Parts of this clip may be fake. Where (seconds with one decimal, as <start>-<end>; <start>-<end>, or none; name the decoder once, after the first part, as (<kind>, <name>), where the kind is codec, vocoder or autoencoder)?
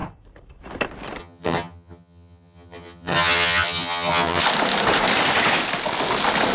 1.2-4.4 (vocoder, HiFi-GAN)